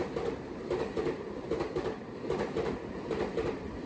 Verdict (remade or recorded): remade